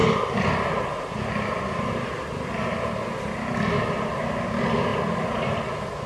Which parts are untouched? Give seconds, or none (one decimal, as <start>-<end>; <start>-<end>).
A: 0.0-6.1